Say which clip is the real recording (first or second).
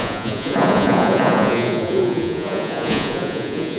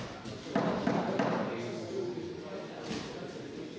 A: second